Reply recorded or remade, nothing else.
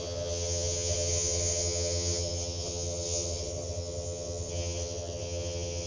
remade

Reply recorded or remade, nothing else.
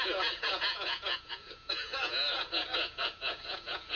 remade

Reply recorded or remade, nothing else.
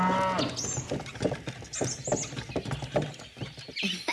recorded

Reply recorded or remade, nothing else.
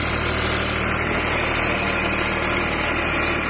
recorded